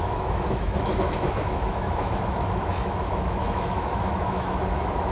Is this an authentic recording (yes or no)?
no